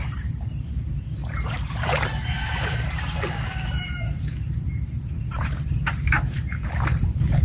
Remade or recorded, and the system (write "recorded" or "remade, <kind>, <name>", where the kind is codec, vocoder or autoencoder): remade, vocoder, BigVGAN v2